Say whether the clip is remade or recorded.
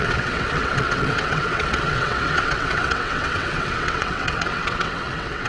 remade